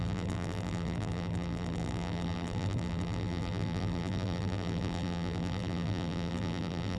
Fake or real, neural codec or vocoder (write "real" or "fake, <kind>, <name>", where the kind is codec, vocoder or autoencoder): fake, vocoder, BigVGAN v2